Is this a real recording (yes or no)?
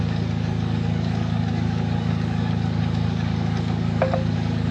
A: no